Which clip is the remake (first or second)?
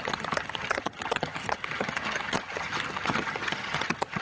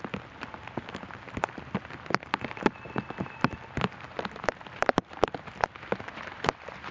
first